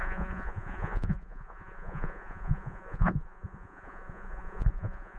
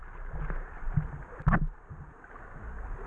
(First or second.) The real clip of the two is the second